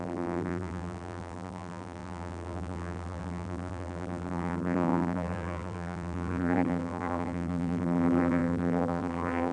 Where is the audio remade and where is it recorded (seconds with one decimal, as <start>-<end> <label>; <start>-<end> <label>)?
0.0-9.5 remade

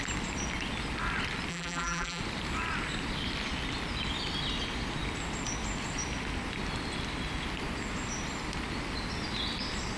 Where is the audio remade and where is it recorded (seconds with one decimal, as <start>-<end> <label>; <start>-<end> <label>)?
0.0-1.5 recorded; 1.5-2.2 remade; 2.2-10.0 recorded

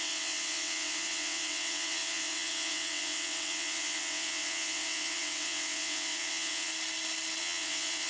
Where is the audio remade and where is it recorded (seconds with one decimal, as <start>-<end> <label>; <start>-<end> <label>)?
0.0-6.7 remade; 6.7-7.4 recorded; 7.4-8.1 remade

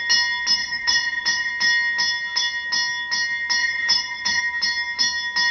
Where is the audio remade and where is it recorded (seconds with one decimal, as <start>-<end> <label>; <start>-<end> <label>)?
0.0-0.6 recorded; 0.6-1.5 remade; 1.5-3.6 recorded; 3.6-4.4 remade; 4.4-5.5 recorded

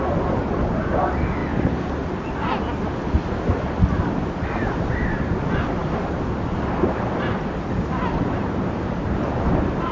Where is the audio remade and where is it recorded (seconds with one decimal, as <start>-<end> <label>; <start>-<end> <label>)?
0.0-9.9 recorded

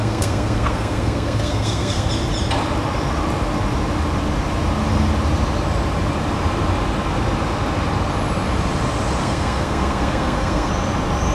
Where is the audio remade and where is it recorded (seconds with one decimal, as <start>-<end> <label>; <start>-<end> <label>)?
0.0-2.1 remade; 2.1-9.2 recorded; 9.2-10.7 remade; 10.7-11.3 recorded

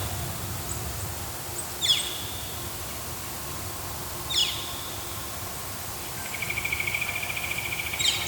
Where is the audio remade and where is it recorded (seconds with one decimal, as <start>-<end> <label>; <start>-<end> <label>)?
0.0-4.4 recorded; 4.4-5.0 remade; 5.0-8.3 recorded